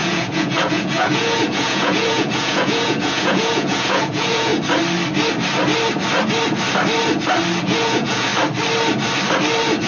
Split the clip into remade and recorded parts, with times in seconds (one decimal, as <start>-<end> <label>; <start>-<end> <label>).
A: 0.0-4.5 remade; 4.5-7.6 recorded; 7.6-8.3 remade; 8.3-9.9 recorded